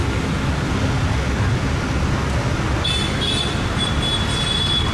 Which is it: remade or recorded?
recorded